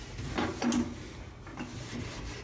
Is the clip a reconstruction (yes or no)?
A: no